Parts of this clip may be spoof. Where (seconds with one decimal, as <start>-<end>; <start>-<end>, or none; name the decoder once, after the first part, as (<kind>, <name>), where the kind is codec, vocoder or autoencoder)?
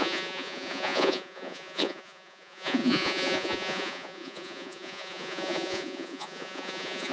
0.0-7.1 (vocoder, Vocos)